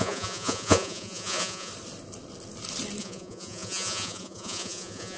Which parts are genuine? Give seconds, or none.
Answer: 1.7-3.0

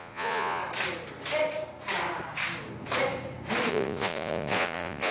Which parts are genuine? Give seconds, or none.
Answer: 0.6-3.7

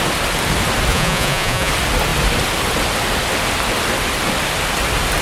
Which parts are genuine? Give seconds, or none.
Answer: 0.0-0.9; 1.7-5.2